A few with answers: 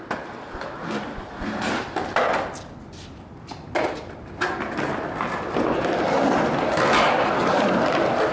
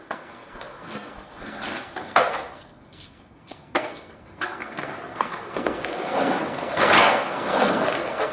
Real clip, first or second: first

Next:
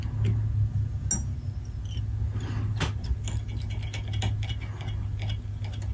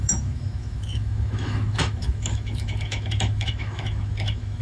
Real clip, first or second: first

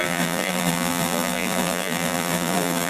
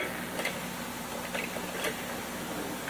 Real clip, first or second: second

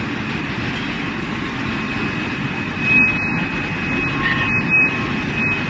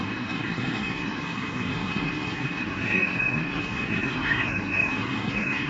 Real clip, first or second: first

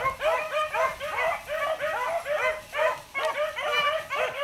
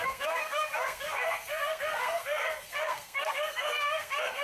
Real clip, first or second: first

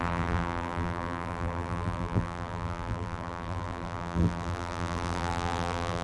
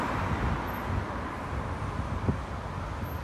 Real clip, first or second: second